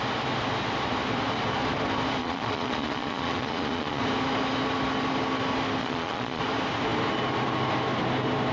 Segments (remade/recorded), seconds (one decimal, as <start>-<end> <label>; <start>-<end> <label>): 0.0-2.2 recorded; 2.2-4.0 remade; 4.0-5.8 recorded; 5.8-6.4 remade; 6.4-8.5 recorded